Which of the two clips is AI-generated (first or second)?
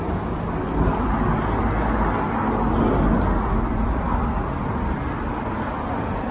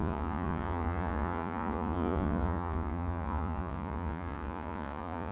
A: second